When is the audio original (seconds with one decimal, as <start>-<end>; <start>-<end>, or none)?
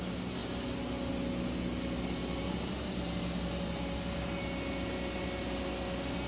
0.0-6.3